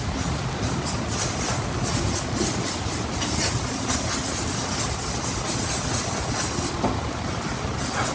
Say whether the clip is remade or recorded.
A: recorded